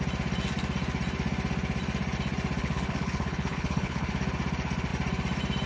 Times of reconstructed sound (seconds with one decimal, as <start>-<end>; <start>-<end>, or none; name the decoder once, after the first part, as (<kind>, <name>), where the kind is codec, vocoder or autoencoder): 2.6-4.1 (codec, HILCodec)